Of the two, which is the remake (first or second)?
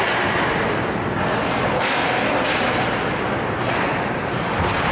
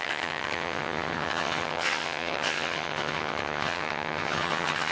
second